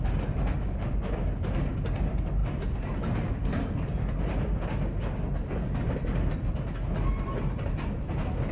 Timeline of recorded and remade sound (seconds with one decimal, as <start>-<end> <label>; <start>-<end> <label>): 0.0-8.5 recorded